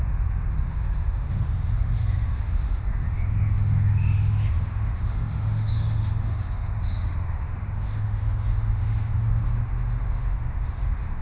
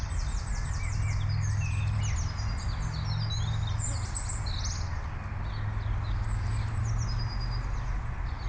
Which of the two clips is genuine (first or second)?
second